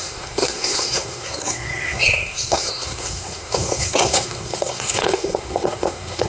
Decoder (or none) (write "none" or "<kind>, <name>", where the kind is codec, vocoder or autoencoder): codec, SNAC